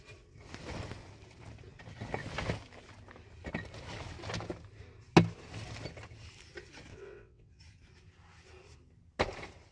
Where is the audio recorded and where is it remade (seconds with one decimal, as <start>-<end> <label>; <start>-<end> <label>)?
0.0-6.9 recorded; 6.9-7.6 remade; 7.6-9.7 recorded